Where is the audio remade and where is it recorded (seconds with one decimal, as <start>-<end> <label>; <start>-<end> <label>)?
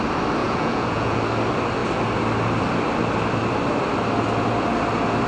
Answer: 0.0-0.4 recorded; 0.4-1.2 remade; 1.2-5.3 recorded